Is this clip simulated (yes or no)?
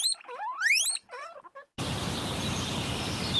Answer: no